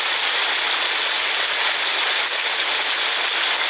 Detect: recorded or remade recorded